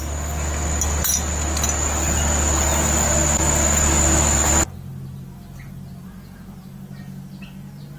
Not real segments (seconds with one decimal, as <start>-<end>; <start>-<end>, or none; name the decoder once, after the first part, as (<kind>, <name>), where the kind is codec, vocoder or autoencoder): none